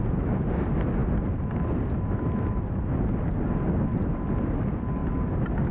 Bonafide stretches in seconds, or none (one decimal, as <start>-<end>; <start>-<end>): 0.0-5.7